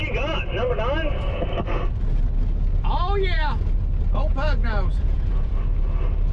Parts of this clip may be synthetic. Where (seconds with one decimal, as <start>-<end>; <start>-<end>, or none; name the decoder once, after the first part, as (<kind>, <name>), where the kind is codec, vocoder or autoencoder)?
4.3-5.5 (vocoder, Vocos)